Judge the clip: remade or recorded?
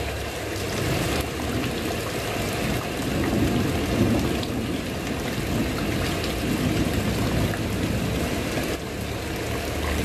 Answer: recorded